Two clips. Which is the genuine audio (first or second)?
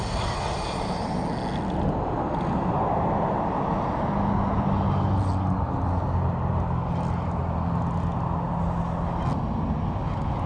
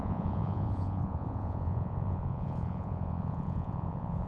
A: first